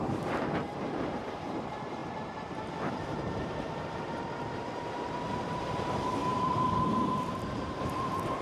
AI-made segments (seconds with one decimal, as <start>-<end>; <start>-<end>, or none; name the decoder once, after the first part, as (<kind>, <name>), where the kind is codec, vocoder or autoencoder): 0.0-8.4 (vocoder, BigVGAN v2)